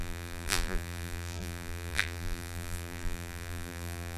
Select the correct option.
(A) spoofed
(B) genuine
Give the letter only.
A